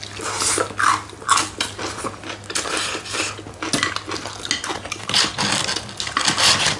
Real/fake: real